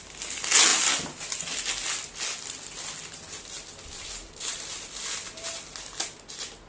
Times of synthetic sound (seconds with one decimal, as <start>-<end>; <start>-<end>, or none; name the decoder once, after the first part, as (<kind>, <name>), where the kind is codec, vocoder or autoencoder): none